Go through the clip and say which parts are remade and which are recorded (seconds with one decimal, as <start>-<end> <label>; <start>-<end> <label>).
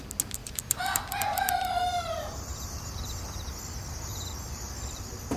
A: 0.0-0.4 recorded; 0.4-3.6 remade; 3.6-4.1 recorded; 4.1-4.7 remade; 4.7-5.4 recorded